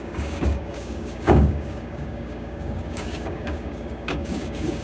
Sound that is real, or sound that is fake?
fake